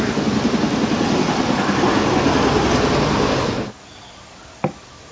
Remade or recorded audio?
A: recorded